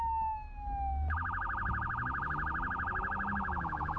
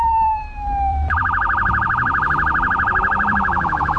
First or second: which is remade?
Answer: second